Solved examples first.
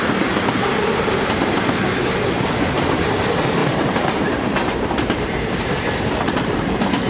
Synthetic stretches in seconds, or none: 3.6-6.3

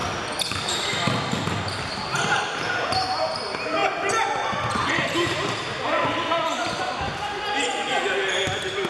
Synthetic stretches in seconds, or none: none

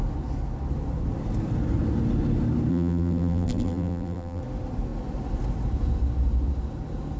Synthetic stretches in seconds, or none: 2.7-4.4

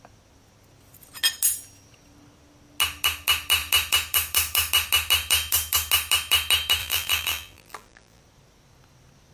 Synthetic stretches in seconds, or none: 6.8-8.2